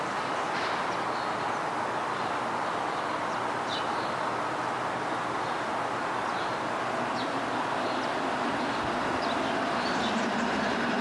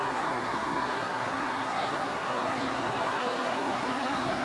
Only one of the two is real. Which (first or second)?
first